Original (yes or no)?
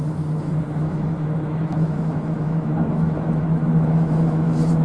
no